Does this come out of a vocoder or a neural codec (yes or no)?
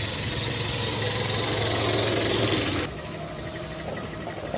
no